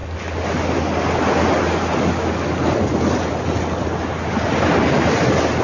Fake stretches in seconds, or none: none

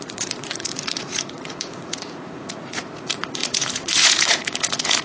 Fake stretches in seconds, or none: 0.0-5.0

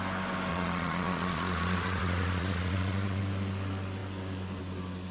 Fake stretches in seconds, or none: 0.5-3.2

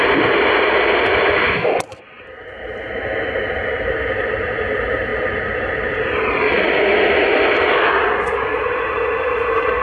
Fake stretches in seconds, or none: none

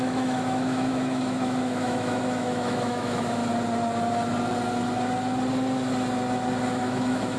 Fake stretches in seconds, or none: 0.0-3.4; 6.7-7.4

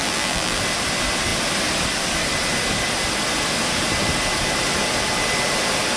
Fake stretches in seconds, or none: 0.0-0.6

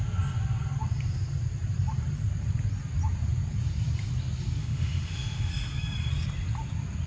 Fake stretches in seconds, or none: 4.6-5.5